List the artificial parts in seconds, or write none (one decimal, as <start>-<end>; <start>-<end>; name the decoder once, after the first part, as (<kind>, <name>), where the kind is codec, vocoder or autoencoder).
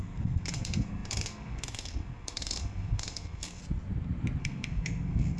0.0-3.6 (codec, SNAC); 4.4-5.4